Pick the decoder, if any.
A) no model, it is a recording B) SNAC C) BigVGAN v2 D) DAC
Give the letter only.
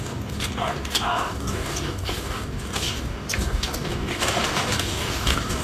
D